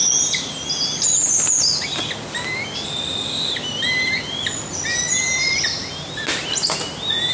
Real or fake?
real